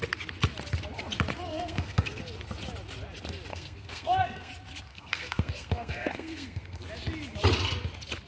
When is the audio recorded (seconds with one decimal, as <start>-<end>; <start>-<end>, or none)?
0.0-1.5; 2.2-3.5; 4.5-4.9; 6.8-8.3